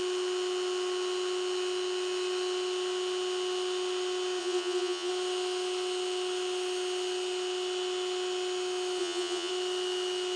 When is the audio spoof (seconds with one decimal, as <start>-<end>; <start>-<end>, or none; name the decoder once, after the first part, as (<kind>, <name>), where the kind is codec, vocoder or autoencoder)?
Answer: 4.4-5.1 (vocoder, WaveNeXt); 9.0-9.5